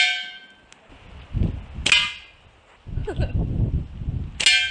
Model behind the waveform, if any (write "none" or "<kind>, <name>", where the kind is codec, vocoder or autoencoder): none